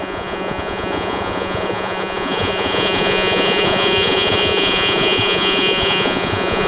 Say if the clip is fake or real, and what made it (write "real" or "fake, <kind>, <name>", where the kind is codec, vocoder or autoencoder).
fake, vocoder, Vocos